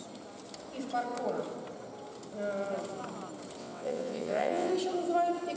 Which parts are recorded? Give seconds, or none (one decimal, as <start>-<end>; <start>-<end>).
0.0-3.6; 4.7-5.6